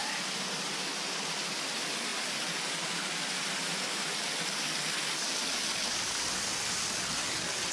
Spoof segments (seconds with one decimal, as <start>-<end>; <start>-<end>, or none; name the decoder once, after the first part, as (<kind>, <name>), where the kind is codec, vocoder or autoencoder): none